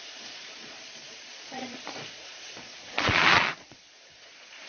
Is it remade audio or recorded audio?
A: remade